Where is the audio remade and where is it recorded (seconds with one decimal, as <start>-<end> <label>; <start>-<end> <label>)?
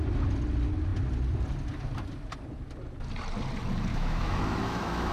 0.0-3.9 recorded; 3.9-5.1 remade